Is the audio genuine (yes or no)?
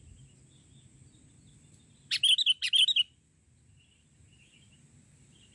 yes